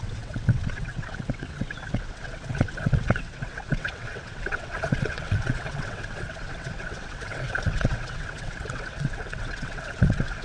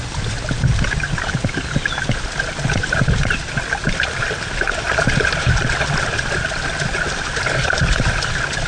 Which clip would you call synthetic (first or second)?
first